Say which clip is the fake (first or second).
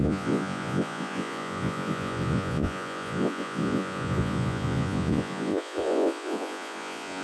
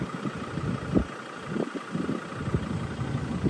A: first